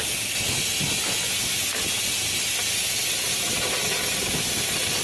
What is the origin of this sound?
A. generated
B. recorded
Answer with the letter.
B